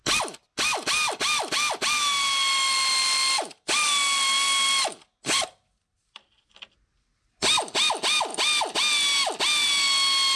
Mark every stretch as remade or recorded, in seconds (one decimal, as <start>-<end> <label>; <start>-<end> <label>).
0.0-10.4 recorded